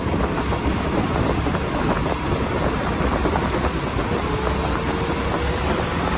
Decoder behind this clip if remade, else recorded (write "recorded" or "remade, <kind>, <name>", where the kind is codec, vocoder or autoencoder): recorded